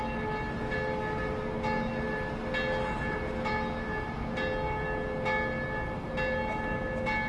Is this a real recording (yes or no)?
yes